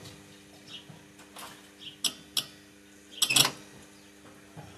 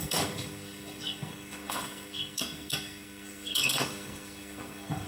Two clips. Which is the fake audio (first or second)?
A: second